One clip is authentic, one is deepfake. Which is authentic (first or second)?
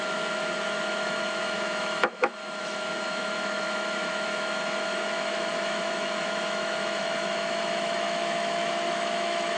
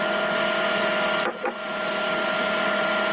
second